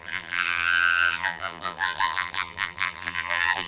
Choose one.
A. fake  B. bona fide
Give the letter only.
A